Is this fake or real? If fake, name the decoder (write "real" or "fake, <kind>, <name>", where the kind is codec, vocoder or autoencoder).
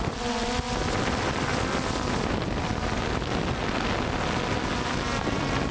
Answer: real